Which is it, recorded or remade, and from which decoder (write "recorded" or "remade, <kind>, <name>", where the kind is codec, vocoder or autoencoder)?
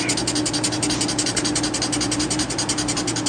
recorded